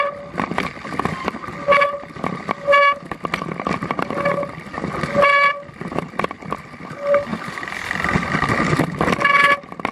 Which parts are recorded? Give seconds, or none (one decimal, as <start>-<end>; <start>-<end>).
0.0-9.9